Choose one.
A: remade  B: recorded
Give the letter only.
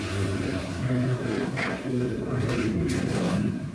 A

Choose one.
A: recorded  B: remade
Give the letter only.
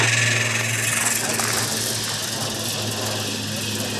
A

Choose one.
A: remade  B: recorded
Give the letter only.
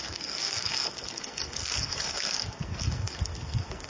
A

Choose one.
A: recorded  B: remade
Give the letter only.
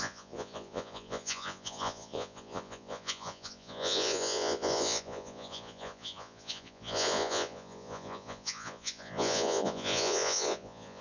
B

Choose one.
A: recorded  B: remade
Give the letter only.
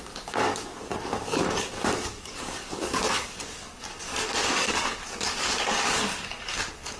B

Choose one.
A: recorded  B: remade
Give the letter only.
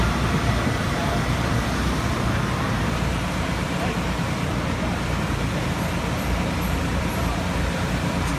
B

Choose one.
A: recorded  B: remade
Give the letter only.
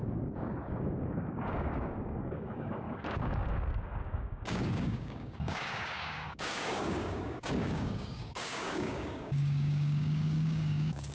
B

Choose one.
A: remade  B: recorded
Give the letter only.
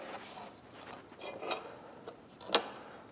B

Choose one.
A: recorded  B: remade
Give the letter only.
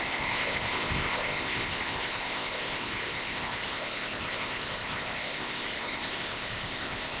B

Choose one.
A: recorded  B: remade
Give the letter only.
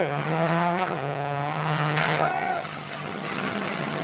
B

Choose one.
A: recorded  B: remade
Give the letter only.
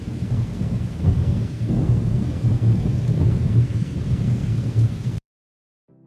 B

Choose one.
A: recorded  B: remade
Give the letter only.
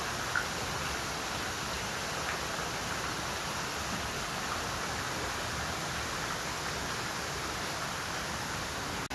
A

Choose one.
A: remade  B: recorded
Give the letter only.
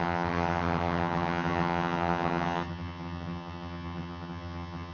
A